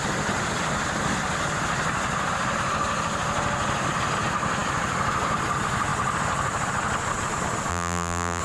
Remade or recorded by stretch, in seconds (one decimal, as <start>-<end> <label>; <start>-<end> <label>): 0.0-7.7 recorded; 7.7-8.4 remade